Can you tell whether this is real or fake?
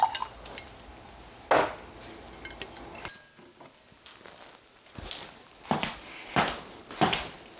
real